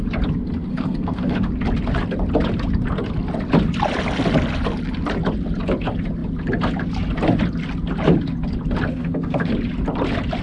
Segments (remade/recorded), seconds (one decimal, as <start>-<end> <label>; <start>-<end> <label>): 0.0-0.7 recorded; 0.7-1.5 remade; 1.5-8.9 recorded; 8.9-9.5 remade; 9.5-10.4 recorded